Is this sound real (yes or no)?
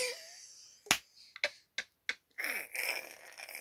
yes